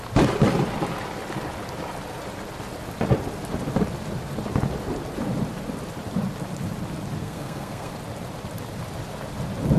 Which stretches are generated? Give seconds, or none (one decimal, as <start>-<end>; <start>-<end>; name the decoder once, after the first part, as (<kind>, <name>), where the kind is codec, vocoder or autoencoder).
7.2-7.9 (codec, SNAC)